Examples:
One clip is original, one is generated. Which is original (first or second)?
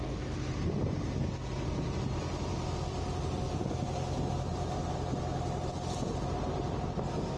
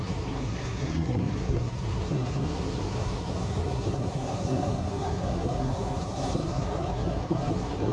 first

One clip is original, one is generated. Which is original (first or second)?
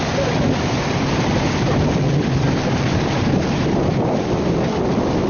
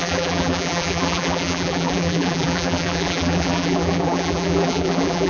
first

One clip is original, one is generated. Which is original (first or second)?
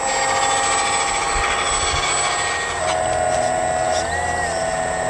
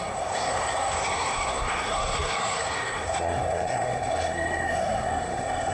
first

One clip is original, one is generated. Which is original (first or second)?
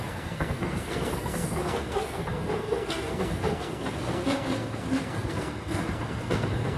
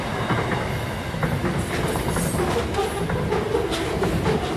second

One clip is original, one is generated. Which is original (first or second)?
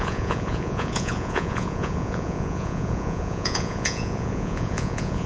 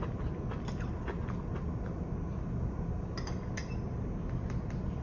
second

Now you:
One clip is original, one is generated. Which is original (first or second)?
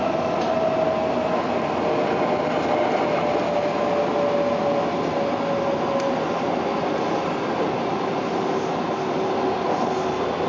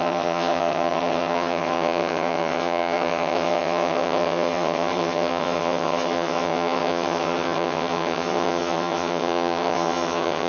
first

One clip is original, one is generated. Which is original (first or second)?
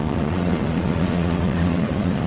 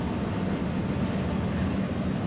second